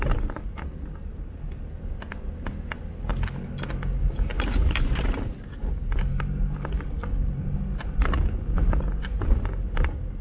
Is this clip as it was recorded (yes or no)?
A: yes